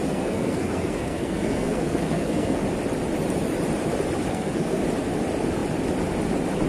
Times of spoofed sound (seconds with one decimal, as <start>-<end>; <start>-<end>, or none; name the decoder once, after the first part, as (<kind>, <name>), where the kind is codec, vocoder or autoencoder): 0.0-2.6 (codec, SNAC); 4.3-4.8